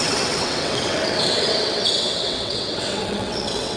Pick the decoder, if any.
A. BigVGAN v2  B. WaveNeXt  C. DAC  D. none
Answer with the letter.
B